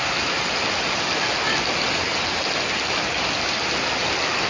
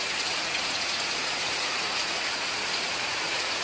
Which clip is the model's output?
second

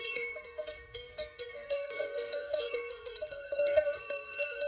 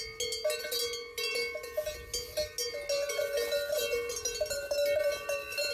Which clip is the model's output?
first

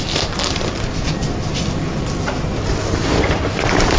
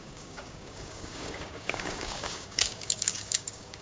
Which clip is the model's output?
second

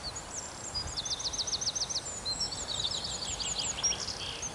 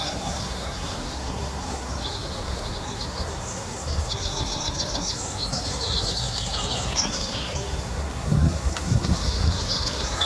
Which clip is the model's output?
second